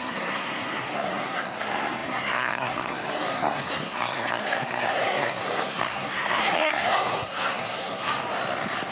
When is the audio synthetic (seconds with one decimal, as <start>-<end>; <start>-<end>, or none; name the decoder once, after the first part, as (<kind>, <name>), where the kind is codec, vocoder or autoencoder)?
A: 0.0-8.1 (codec, SNAC)